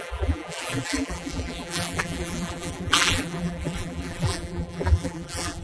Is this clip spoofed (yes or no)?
yes